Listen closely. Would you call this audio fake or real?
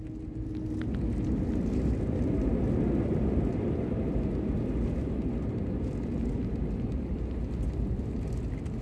real